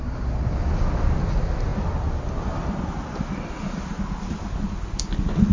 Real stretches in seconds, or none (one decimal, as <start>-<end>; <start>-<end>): 0.0-5.5

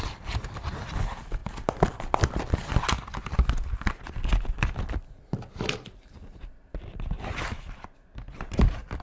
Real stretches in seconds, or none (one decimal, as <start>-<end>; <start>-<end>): 0.0-9.0